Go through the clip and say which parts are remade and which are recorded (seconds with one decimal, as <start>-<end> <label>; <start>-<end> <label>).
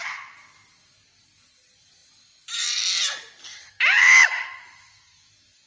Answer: 0.0-3.5 recorded; 3.5-5.3 remade; 5.3-5.7 recorded